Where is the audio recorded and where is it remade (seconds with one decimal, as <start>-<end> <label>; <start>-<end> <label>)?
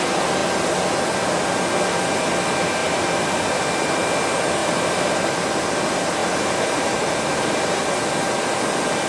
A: 0.0-2.8 recorded; 2.8-3.6 remade; 3.6-4.6 recorded; 4.6-5.2 remade; 5.2-6.2 recorded; 6.2-7.8 remade; 7.8-9.1 recorded